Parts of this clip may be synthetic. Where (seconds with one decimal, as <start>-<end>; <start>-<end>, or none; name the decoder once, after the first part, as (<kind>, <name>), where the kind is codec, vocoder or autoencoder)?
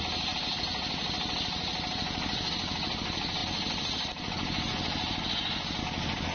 none